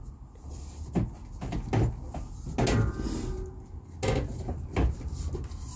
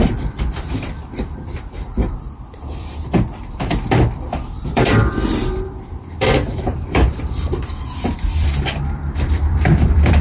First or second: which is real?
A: first